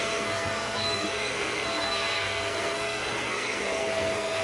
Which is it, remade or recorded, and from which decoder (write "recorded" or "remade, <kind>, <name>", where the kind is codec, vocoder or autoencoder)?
remade, codec, SNAC